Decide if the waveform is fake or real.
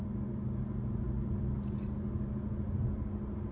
real